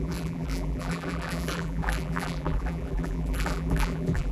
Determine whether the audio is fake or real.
fake